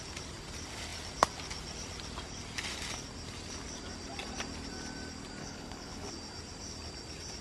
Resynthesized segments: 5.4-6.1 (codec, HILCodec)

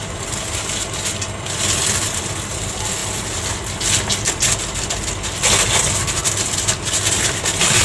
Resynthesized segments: none

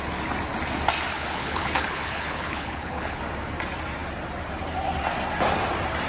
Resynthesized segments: 1.1-3.2 (codec, HILCodec)

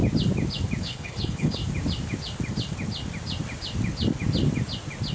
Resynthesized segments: 0.8-1.6 (codec, HILCodec)

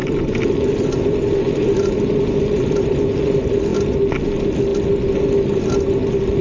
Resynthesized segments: none